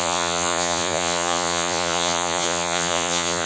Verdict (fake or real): fake